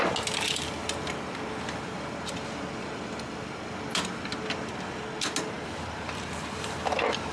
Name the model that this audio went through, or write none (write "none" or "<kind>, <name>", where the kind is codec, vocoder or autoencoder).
none